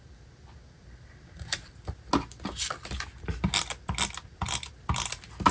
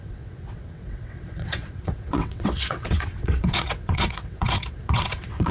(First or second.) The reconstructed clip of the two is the second